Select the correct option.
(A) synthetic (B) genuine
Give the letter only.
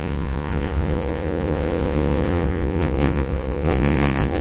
A